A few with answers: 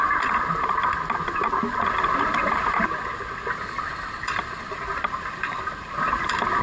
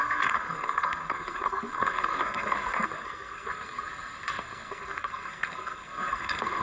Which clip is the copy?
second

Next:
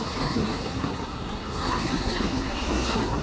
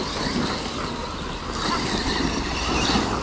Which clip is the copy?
first